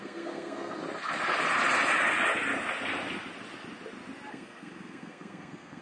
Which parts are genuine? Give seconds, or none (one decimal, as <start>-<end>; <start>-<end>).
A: 0.8-4.3